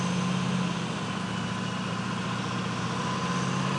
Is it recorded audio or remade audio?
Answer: recorded